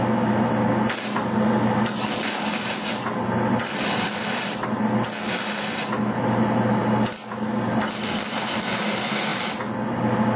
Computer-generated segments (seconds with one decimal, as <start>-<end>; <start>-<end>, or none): none